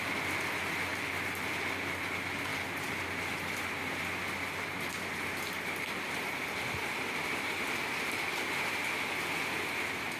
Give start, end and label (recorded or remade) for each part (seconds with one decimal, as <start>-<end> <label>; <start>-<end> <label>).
0.0-10.2 recorded